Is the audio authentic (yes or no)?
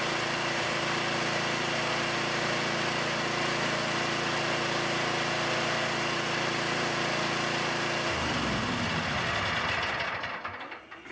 yes